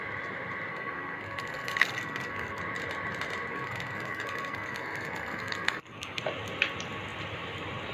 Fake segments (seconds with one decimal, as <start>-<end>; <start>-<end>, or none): 0.7-2.6; 3.5-6.2